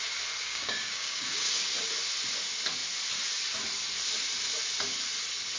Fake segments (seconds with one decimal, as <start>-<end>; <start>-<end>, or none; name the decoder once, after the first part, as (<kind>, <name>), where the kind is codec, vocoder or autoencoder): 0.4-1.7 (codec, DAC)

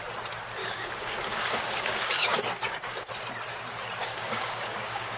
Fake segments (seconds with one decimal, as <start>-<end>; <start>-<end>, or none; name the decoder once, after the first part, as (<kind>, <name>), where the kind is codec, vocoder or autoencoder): 0.6-3.1 (codec, DAC); 4.0-5.2

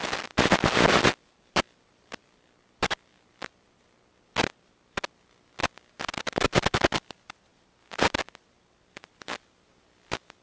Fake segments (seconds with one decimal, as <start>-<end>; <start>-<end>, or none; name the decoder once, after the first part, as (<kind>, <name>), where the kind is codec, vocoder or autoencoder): none

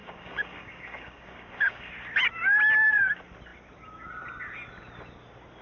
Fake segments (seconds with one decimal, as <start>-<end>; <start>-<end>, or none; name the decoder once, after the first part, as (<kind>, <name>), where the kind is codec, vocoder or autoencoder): 0.0-1.9 (codec, DAC)

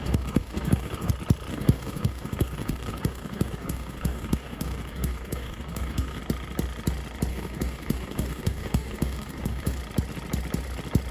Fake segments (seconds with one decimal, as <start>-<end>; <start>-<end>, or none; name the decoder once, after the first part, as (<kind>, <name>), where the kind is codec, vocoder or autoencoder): 0.0-1.1 (codec, DAC); 1.5-6.2; 7.3-9.8

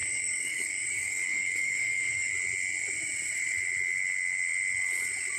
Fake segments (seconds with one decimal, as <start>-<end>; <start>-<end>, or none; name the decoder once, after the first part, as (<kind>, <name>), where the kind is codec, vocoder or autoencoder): 0.0-2.3 (codec, DAC)

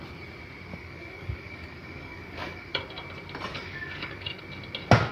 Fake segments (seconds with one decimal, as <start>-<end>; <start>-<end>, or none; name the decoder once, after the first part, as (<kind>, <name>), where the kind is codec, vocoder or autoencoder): 0.7-2.8 (codec, DAC); 3.5-4.4